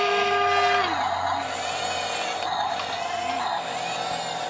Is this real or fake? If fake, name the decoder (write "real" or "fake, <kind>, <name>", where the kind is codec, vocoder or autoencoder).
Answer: real